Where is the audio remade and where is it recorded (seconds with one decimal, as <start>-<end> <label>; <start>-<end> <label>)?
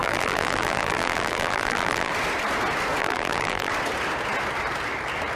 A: 0.0-2.1 remade; 2.1-3.0 recorded; 3.0-3.7 remade; 3.7-5.4 recorded